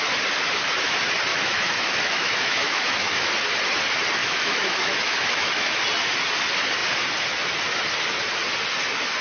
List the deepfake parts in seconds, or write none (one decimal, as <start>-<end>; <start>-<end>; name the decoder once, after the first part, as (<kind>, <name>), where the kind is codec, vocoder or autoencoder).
1.3-3.3 (autoencoder, DAC-VAE); 4.2-5.8